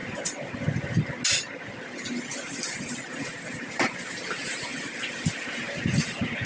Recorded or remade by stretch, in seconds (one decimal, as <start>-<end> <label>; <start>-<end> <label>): 0.0-6.5 recorded